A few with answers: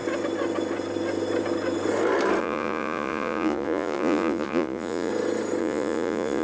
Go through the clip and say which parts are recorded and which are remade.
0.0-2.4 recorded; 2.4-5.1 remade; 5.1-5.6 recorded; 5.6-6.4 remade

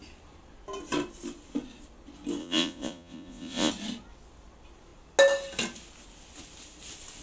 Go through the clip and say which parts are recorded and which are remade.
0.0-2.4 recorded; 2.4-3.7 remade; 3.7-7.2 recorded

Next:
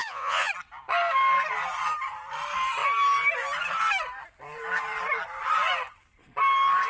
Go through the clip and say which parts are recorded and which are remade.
0.0-0.5 remade; 0.5-6.9 recorded

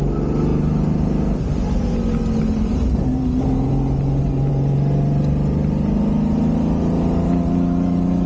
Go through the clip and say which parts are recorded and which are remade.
0.0-8.3 recorded